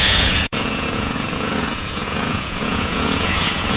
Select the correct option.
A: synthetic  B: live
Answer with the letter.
A